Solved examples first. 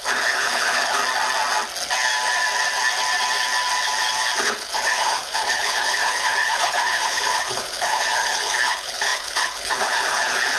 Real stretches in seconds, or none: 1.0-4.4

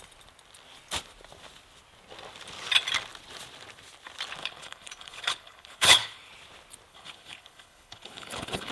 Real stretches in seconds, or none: 0.0-4.4; 6.3-6.9